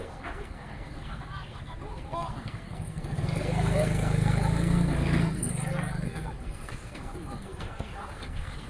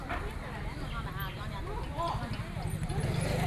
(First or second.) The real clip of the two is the second